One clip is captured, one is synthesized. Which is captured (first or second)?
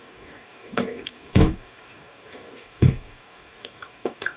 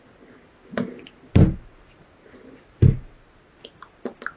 second